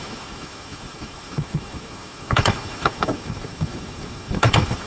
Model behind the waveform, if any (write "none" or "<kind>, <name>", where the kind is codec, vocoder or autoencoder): autoencoder, DAC-VAE